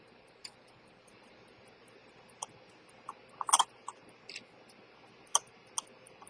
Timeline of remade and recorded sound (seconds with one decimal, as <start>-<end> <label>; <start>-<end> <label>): 0.0-6.3 recorded